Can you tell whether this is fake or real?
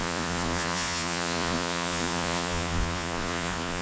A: fake